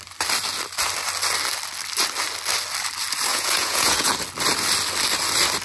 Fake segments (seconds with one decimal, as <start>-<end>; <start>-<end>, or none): 3.3-4.1